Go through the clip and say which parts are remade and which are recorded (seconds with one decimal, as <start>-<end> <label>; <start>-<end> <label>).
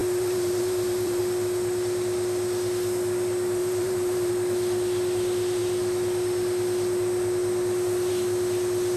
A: 0.0-1.2 remade; 1.2-3.6 recorded; 3.6-4.3 remade; 4.3-9.0 recorded